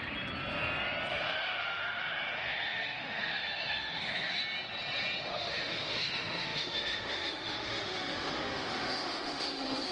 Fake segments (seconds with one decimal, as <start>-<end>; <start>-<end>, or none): 1.1-4.4; 5.3-9.9